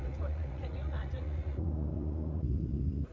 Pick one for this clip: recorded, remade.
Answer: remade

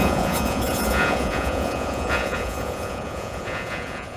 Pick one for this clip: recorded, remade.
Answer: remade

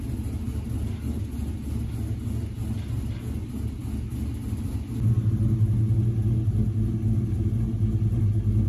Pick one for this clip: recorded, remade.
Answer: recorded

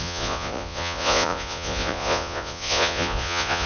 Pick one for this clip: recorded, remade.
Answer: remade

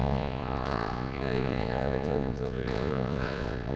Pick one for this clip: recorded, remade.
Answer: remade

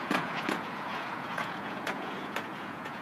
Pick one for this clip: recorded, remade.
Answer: remade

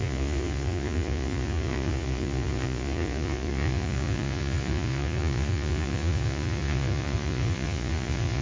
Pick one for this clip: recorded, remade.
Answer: remade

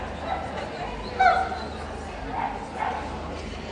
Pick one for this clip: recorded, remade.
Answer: recorded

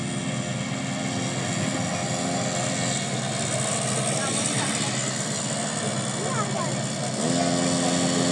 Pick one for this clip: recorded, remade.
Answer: recorded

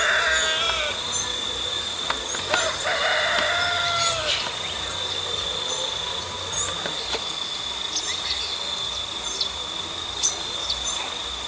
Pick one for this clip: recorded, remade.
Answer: recorded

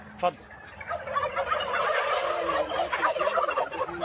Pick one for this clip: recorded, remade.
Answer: recorded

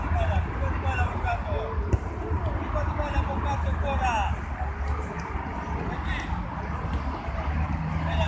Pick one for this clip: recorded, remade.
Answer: recorded